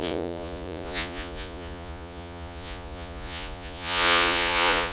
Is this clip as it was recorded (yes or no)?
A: no